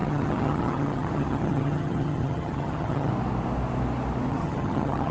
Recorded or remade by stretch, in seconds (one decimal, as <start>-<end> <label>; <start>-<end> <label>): 0.0-3.1 remade; 3.1-4.3 recorded; 4.3-5.1 remade